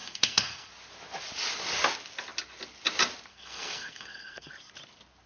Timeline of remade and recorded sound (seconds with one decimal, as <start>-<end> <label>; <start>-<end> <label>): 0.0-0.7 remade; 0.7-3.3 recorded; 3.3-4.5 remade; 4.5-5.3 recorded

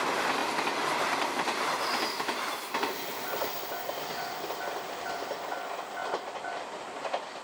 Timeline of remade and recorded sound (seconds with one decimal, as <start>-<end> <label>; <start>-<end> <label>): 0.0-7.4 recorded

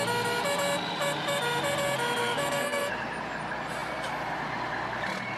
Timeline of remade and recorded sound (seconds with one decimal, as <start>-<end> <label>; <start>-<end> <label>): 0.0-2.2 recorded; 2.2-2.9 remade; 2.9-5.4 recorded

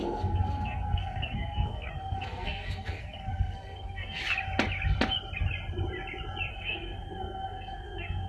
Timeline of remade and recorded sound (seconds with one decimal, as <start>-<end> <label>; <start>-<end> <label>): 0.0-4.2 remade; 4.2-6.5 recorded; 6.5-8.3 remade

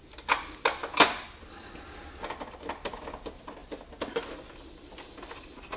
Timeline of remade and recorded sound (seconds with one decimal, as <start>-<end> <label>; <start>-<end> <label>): 0.0-5.8 recorded